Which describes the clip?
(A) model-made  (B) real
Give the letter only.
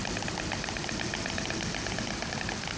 B